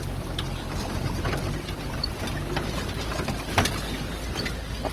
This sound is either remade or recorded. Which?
recorded